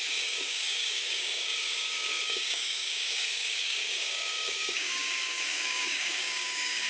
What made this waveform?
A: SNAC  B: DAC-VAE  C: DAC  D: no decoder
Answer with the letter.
C